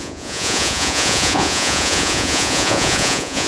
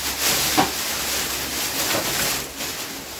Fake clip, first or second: first